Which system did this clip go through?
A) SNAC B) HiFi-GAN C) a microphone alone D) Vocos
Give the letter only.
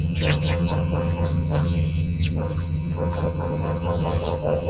B